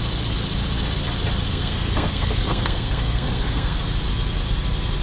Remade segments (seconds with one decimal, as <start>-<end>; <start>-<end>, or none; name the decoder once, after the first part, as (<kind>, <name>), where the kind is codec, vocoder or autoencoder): 1.5-3.8 (codec, SNAC)

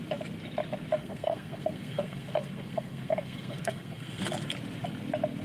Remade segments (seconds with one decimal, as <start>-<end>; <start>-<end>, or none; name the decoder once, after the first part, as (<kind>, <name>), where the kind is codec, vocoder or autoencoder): 1.0-4.2 (codec, SNAC)

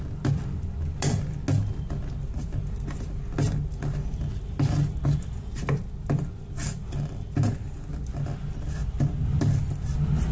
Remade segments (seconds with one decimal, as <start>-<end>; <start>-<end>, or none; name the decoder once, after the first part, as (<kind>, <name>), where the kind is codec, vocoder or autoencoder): none